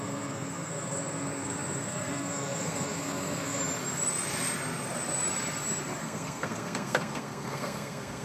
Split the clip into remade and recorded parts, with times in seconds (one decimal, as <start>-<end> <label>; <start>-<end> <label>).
0.0-3.6 remade; 3.6-6.0 recorded; 6.0-8.2 remade